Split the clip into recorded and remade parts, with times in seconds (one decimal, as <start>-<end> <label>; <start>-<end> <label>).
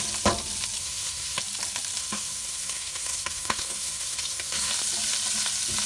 0.0-0.8 recorded; 0.8-1.4 remade; 1.4-2.0 recorded; 2.0-4.7 remade; 4.7-5.9 recorded